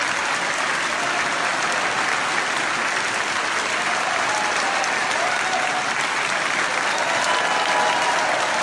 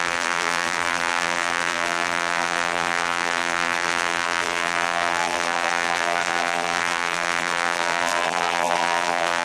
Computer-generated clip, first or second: second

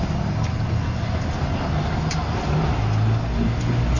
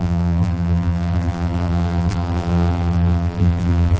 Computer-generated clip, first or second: second